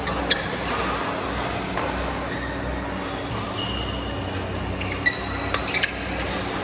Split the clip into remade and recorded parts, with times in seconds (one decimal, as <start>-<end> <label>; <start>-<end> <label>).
0.0-6.6 recorded